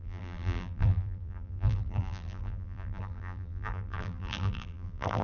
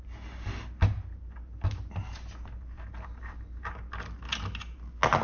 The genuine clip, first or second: second